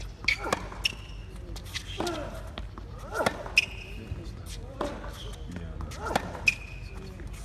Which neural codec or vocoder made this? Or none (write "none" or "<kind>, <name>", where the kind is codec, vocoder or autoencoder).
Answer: none